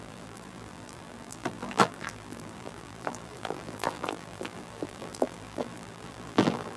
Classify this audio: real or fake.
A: fake